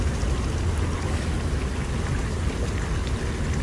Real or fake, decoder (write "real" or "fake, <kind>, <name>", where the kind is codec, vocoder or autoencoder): real